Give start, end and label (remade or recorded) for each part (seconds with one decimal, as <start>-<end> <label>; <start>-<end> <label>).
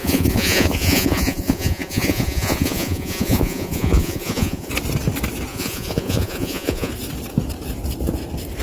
0.0-4.7 remade; 4.7-5.5 recorded; 5.5-6.9 remade; 6.9-8.6 recorded